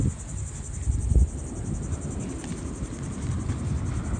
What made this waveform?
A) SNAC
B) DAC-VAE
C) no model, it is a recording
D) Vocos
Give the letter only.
C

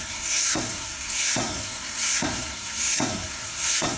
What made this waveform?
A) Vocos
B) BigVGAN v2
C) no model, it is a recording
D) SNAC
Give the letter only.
D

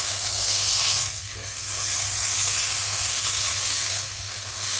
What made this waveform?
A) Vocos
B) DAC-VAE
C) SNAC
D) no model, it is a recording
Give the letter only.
C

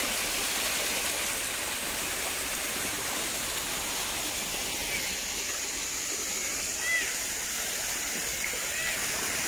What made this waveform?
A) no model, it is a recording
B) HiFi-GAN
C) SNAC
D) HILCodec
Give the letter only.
A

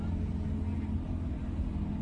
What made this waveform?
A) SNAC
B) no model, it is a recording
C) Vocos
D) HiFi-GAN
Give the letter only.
B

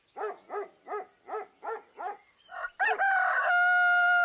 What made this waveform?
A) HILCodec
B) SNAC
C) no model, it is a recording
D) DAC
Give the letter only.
C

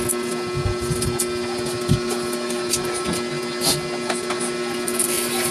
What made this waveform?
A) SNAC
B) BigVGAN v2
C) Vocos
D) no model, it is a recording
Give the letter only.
D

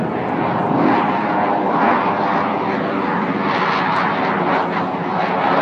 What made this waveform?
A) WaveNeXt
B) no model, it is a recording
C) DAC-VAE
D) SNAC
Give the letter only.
B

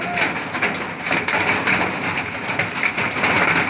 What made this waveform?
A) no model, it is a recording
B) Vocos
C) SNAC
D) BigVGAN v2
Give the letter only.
A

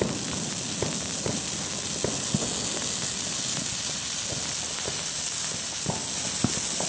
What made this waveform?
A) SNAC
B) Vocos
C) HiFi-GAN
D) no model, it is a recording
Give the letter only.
D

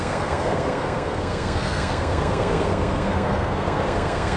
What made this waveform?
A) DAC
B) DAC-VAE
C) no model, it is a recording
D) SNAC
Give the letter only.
D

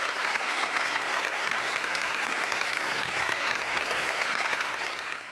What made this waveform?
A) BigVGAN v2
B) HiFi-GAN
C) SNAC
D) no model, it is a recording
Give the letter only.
C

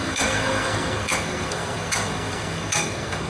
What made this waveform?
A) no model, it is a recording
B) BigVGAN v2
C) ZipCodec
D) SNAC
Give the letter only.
D